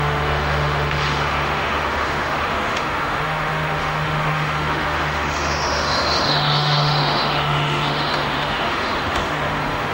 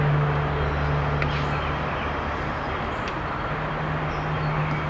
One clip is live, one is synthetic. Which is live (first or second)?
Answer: second